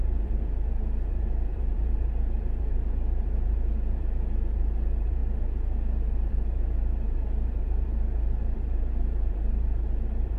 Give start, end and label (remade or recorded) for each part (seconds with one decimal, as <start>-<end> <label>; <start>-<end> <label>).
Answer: 0.0-10.4 remade